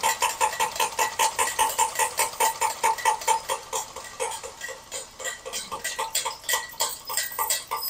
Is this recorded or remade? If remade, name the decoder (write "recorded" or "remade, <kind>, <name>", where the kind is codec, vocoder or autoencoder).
recorded